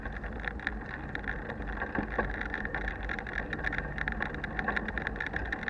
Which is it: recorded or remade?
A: recorded